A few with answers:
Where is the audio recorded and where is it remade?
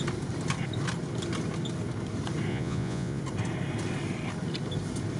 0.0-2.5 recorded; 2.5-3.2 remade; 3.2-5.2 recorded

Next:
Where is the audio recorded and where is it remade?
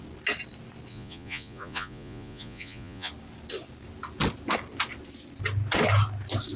0.0-0.9 recorded; 0.9-3.1 remade; 3.1-6.6 recorded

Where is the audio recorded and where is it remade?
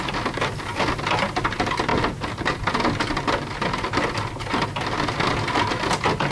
0.0-6.3 recorded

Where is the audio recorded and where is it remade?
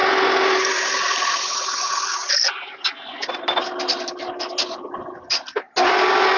0.0-6.4 recorded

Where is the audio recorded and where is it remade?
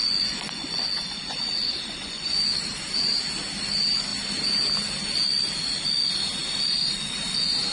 0.0-2.4 remade; 2.4-7.7 recorded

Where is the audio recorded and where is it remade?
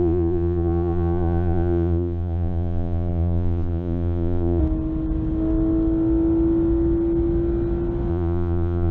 0.0-4.6 remade; 4.6-8.1 recorded; 8.1-8.9 remade